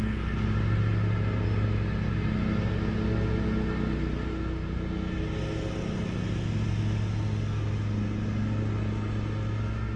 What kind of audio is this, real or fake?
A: real